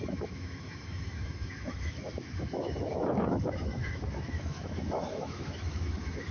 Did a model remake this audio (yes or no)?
yes